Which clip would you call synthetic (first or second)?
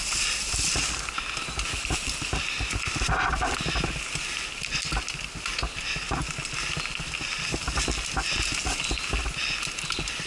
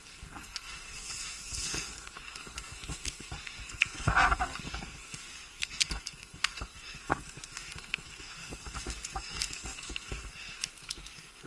second